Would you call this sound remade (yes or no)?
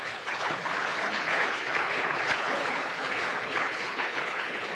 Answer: yes